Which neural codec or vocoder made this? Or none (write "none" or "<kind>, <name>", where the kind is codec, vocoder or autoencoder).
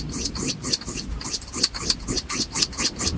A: none